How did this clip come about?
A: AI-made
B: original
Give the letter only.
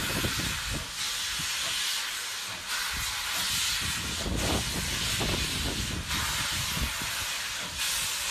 B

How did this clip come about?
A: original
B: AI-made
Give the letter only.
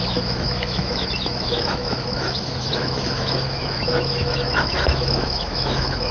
B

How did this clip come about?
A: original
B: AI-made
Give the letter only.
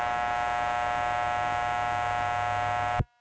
A